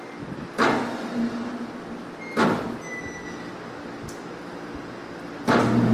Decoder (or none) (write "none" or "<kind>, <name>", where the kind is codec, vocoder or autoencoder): none